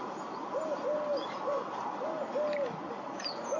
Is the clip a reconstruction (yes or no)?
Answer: no